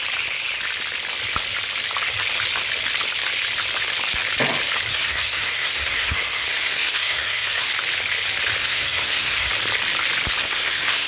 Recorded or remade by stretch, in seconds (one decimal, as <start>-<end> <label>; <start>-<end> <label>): 0.0-4.9 recorded; 4.9-7.7 remade; 7.7-8.6 recorded; 8.6-9.5 remade; 9.5-10.4 recorded; 10.4-11.1 remade